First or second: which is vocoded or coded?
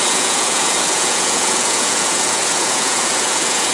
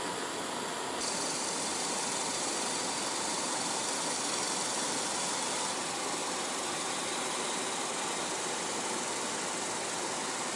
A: first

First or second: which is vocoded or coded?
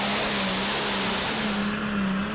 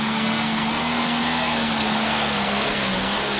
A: second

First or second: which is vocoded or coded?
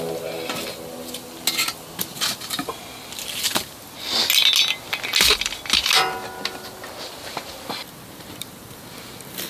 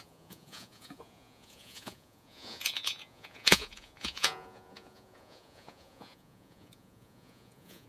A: second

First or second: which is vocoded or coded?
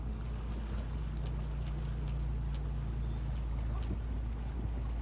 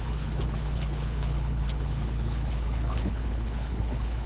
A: second